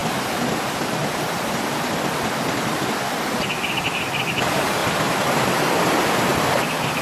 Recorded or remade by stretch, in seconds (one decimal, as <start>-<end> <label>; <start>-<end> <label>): 0.0-6.3 remade; 6.3-7.0 recorded